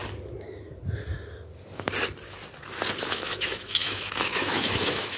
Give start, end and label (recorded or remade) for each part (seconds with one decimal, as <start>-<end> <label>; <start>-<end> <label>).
0.0-3.1 recorded; 3.1-5.2 remade